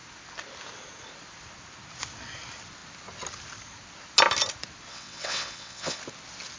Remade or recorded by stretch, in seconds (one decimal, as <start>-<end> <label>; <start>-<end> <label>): 0.0-4.9 recorded; 4.9-6.0 remade; 6.0-6.6 recorded